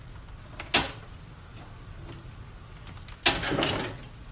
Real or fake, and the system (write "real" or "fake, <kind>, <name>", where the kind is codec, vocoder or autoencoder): real